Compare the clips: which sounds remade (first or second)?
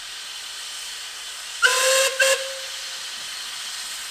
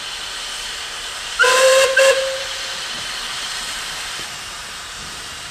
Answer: second